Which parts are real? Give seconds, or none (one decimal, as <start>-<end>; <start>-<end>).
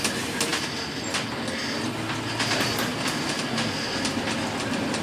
0.0-0.5; 1.3-2.9; 3.5-5.0